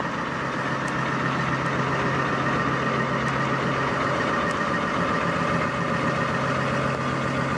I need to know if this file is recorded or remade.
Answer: recorded